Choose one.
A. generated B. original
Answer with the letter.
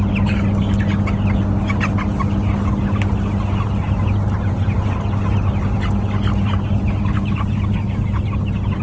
B